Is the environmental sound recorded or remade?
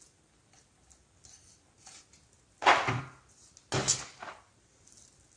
recorded